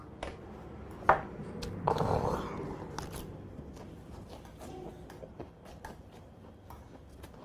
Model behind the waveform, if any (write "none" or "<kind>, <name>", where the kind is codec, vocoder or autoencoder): none